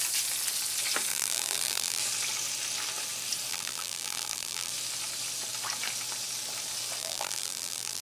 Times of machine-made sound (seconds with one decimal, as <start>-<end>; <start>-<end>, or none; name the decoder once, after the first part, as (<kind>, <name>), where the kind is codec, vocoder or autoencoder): 1.1-2.0 (vocoder, BigVGAN v2); 3.5-4.7; 7.0-8.0